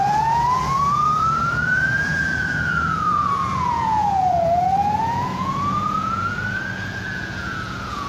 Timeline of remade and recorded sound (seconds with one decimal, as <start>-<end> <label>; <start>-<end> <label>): 0.0-8.1 remade